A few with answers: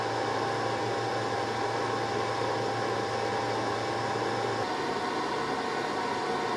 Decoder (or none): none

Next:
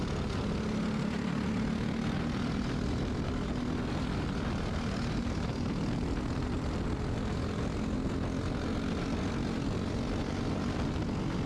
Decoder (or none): none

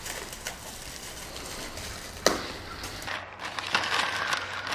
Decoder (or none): none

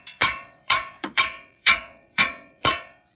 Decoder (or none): vocoder, Vocos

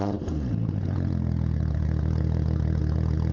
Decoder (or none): vocoder, Vocos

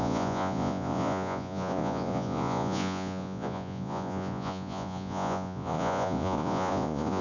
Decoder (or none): vocoder, Vocos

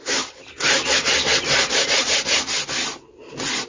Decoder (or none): none